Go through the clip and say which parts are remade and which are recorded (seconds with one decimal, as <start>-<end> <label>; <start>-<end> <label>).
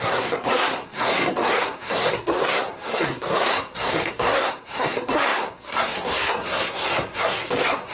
0.0-7.9 remade